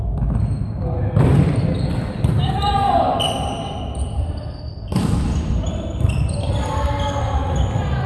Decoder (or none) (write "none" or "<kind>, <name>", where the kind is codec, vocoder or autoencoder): none